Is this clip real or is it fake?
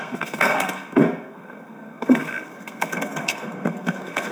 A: fake